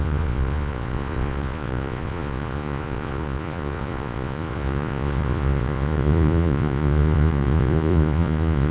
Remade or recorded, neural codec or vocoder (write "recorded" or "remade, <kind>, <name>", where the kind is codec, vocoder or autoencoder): remade, vocoder, Vocos